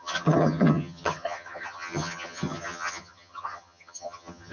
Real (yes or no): no